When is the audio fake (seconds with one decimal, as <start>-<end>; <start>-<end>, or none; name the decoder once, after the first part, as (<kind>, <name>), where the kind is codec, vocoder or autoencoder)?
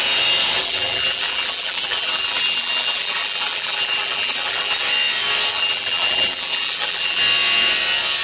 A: 0.6-4.8 (vocoder, BigVGAN v2); 5.5-7.2